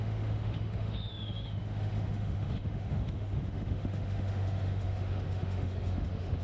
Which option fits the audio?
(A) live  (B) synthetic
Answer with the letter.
B